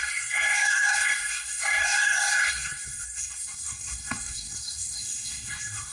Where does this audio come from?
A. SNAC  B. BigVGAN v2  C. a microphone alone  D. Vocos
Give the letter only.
A